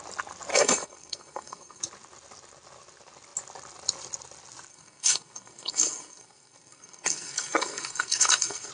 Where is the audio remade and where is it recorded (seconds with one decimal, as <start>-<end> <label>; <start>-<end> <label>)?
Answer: 0.0-0.5 recorded; 0.5-1.8 remade; 1.8-4.7 recorded; 4.7-8.7 remade